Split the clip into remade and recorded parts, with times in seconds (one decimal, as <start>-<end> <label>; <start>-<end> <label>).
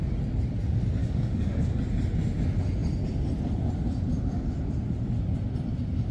0.0-1.0 recorded; 1.0-1.8 remade; 1.8-6.1 recorded